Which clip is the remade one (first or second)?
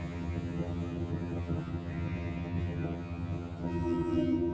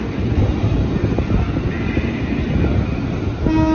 first